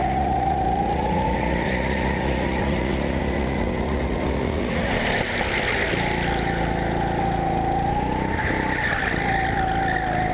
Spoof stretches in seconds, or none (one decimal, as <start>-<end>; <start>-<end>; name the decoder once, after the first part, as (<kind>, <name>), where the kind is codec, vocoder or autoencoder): 0.0-4.9 (vocoder, Vocos)